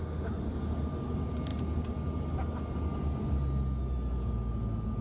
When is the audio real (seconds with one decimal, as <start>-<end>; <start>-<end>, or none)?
0.0-5.0